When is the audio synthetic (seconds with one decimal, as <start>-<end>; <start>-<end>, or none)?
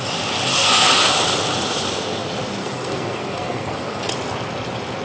0.5-1.1; 2.6-4.1